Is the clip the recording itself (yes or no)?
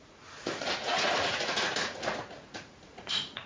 no